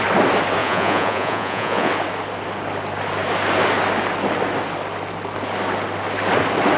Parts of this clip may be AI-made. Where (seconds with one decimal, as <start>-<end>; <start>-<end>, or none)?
0.6-1.9